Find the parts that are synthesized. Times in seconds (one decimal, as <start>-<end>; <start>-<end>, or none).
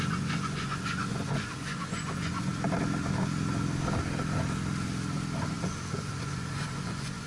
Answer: 0.0-2.5; 5.4-7.3